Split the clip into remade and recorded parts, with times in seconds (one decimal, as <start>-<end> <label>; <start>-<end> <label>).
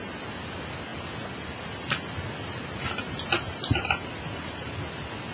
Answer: 0.0-5.3 recorded